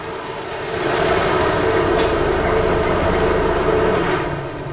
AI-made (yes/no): no